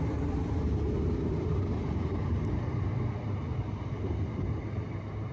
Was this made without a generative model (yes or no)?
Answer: no